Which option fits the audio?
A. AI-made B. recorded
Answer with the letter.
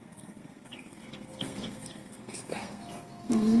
A